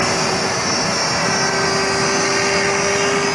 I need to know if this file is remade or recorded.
recorded